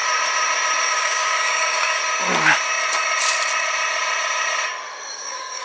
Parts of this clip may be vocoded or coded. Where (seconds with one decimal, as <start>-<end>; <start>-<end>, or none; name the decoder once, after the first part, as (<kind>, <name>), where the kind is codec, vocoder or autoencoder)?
0.8-2.0 (codec, DAC); 5.1-5.6